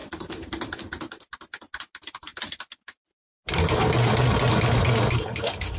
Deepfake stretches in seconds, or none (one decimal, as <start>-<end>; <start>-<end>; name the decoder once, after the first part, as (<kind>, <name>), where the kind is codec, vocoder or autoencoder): 0.0-1.1 (vocoder, BigVGAN v2)